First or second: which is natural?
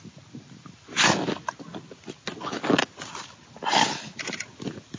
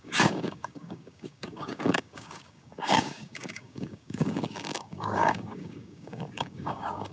first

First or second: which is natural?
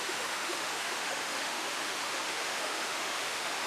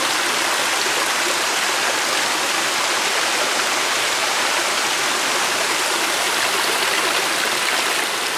second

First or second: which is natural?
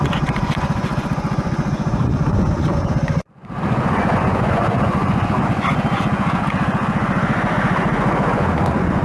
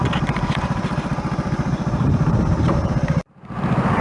second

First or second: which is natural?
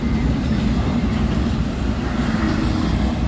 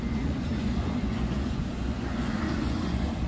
first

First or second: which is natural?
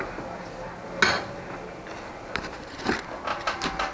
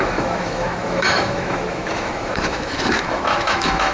first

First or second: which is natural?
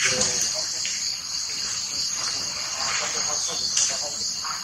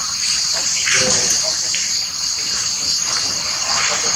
first